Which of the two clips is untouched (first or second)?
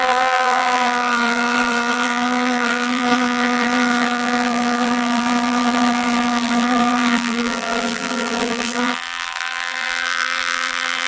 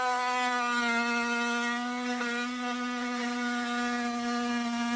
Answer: second